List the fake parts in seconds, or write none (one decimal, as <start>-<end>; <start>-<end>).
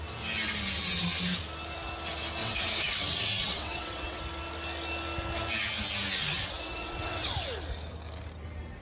2.4-4.2; 6.2-7.3